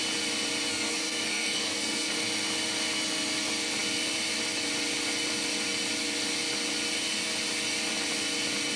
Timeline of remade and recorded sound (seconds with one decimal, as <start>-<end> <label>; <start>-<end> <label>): 0.0-0.7 recorded; 0.7-2.1 remade; 2.1-8.8 recorded